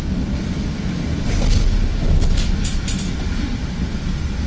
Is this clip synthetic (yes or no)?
no